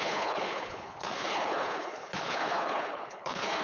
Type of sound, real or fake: fake